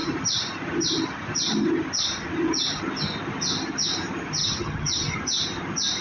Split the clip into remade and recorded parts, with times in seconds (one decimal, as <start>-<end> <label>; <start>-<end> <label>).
0.0-4.4 recorded; 4.4-5.2 remade; 5.2-6.0 recorded